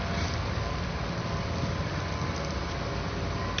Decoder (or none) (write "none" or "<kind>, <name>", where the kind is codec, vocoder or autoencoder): none